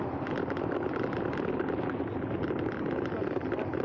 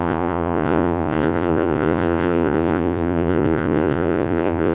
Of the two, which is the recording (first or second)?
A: first